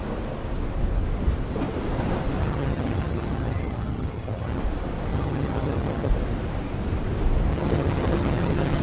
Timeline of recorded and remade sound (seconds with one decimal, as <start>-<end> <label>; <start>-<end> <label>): 0.0-2.4 recorded; 2.4-4.6 remade; 4.6-5.1 recorded; 5.1-6.1 remade; 6.1-7.5 recorded; 7.5-8.8 remade

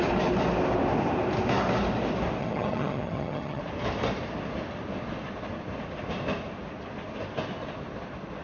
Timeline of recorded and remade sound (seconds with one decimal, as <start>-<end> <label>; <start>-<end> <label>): 0.0-2.4 recorded; 2.4-3.6 remade; 3.6-8.4 recorded

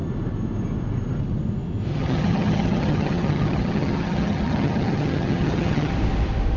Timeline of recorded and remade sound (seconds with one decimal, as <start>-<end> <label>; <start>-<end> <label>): 0.0-1.9 recorded; 1.9-5.9 remade; 5.9-6.6 recorded